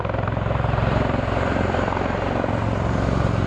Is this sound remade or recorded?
remade